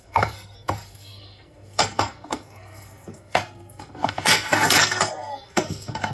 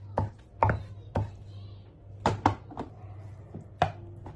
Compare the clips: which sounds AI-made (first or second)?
first